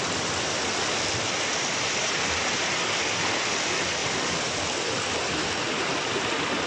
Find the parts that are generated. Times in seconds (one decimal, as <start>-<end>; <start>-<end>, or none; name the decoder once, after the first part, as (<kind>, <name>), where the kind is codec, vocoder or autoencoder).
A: none